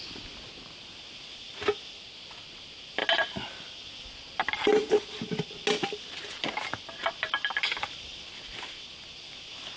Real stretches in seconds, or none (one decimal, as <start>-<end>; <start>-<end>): 0.0-9.8